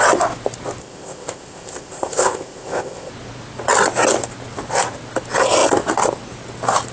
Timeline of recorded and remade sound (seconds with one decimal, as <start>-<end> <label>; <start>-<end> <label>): 0.0-0.8 recorded; 0.8-3.1 remade; 3.1-6.9 recorded